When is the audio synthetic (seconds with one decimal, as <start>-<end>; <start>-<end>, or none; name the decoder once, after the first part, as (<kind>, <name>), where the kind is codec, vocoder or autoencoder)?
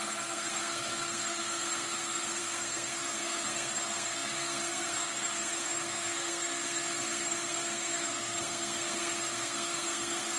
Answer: 0.0-10.4 (codec, SNAC)